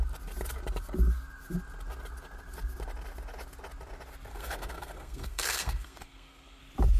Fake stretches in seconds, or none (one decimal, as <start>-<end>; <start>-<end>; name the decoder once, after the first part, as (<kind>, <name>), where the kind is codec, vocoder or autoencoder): 4.3-6.6 (codec, SNAC)